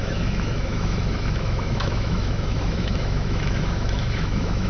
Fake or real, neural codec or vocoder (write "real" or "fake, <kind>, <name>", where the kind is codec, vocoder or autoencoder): fake, autoencoder, DAC-VAE